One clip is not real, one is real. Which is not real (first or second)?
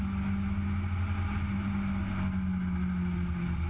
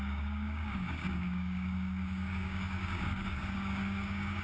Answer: second